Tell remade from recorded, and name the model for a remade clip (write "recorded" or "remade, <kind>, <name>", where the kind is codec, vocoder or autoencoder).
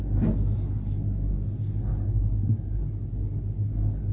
recorded